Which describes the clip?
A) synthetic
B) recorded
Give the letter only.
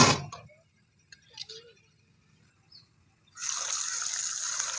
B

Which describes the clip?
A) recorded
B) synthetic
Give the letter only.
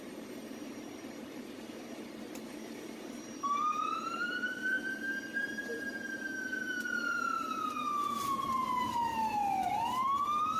B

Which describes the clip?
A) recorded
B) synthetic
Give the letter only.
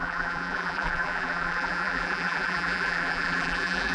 B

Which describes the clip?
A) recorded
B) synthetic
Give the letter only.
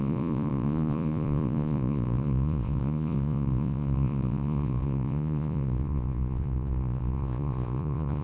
B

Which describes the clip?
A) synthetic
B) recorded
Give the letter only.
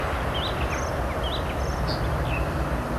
B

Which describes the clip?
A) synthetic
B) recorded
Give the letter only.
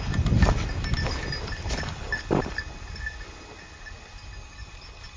B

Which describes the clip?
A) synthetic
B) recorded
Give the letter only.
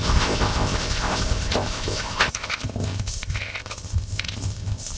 A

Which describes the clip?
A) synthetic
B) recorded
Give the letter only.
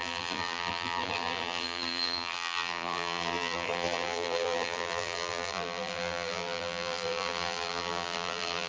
A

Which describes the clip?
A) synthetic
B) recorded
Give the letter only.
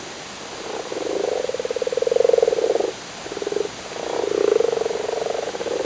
B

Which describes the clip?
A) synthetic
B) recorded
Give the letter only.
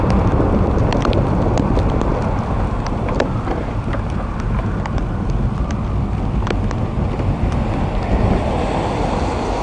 B